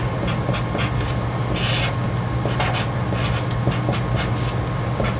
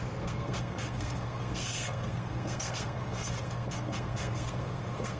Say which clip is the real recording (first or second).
first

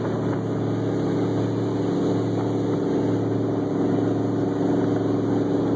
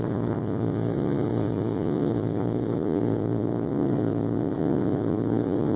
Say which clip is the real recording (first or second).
first